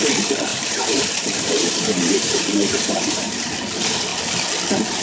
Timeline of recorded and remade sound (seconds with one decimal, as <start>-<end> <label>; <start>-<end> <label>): 0.0-0.5 recorded; 0.5-3.5 remade; 3.5-5.0 recorded